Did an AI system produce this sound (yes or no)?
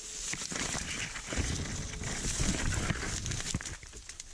no